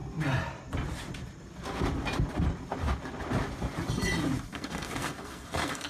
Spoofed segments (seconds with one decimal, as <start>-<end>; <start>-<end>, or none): 4.5-5.9